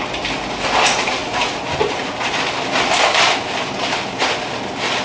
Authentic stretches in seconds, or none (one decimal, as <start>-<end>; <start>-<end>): 0.0-5.0